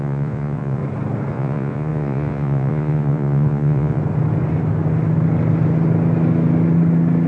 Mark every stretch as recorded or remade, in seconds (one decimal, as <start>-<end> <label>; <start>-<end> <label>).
0.0-0.8 remade; 0.8-1.3 recorded; 1.3-4.0 remade; 4.0-7.3 recorded